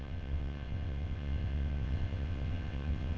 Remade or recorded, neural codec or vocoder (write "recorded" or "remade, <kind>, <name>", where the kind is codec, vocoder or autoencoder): remade, vocoder, WaveNeXt